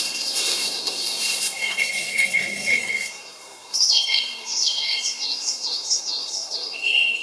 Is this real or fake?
fake